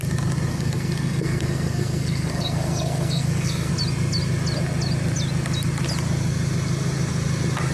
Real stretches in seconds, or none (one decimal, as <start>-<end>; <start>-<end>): 0.0-0.5; 3.7-7.7